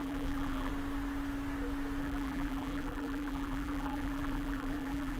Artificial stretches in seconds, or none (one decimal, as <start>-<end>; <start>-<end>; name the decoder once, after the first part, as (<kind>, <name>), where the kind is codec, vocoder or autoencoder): 0.0-0.7 (vocoder, BigVGAN v2); 2.0-5.2